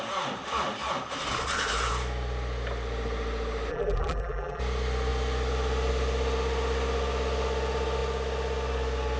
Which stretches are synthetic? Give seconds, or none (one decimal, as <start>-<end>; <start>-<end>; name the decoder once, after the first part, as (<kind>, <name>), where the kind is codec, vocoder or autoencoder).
3.7-4.6 (vocoder, BigVGAN v2)